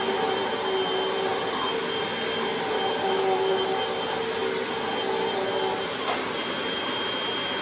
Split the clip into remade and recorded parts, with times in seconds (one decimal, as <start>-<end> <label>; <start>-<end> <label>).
0.0-7.6 recorded